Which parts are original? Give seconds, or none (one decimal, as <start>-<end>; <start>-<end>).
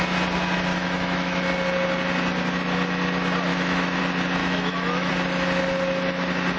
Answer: 0.0-0.7; 1.4-3.5; 4.0-4.4; 5.1-6.6